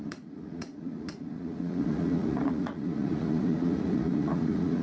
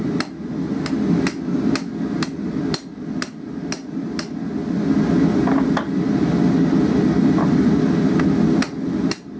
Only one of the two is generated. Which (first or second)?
first